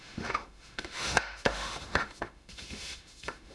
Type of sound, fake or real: fake